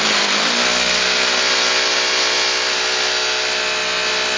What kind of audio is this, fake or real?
real